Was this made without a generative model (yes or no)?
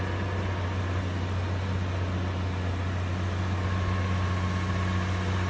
yes